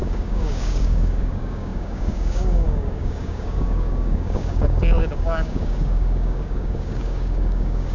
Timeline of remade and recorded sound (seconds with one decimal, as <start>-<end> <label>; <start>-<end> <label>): 0.0-7.9 remade